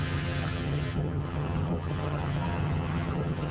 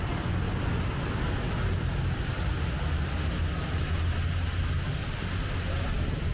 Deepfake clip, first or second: first